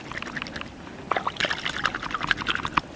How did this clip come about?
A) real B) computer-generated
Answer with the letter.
A